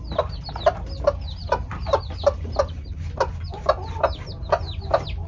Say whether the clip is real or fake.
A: real